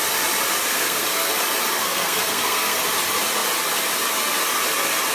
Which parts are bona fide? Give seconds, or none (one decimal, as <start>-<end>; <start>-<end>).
0.0-0.7; 1.3-1.8; 2.8-5.1